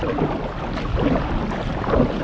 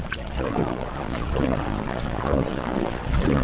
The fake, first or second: second